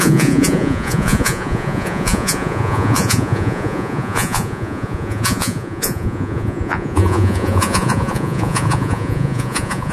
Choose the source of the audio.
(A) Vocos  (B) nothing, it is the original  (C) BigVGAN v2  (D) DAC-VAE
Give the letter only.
A